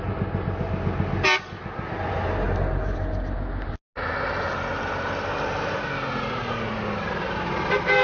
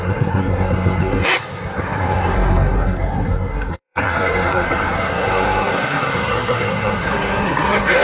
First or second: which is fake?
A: second